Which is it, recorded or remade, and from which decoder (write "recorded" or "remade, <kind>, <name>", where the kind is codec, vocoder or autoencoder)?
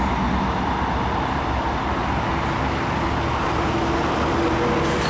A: recorded